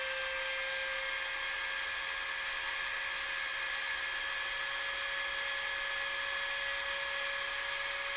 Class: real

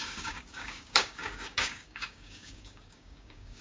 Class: fake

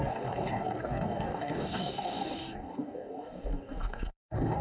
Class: fake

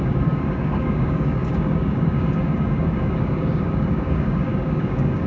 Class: fake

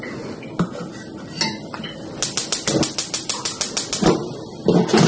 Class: real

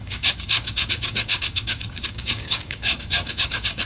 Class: fake